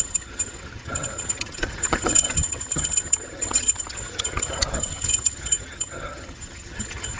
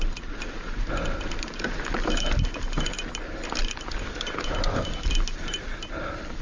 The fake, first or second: first